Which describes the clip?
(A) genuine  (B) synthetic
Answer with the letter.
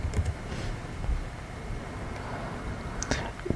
A